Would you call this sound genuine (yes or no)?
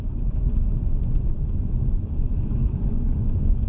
no